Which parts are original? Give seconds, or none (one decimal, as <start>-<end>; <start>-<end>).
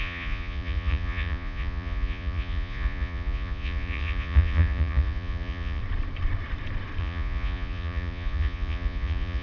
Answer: 5.8-7.0